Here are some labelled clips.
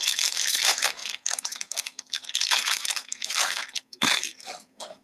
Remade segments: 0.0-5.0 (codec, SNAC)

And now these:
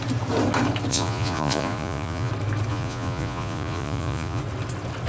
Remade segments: 0.9-2.3 (vocoder, Vocos); 2.7-4.4

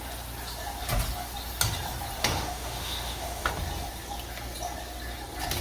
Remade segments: 2.2-3.5 (autoencoder, DAC-VAE)

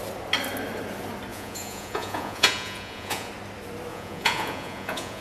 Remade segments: 1.3-3.3 (vocoder, Vocos); 3.9-5.2

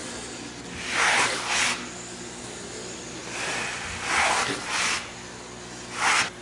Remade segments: none

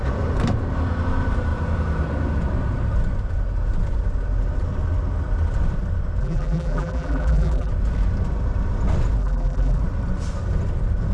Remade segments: 6.2-7.7 (vocoder, BigVGAN v2); 9.2-9.8

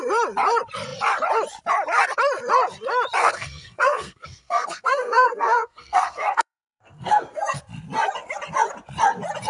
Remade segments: 3.2-7.6 (codec, SNAC)